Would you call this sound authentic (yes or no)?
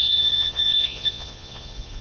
no